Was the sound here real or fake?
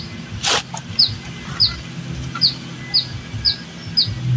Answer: real